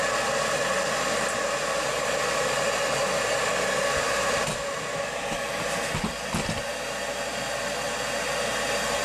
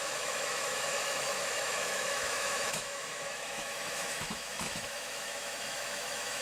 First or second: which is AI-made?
second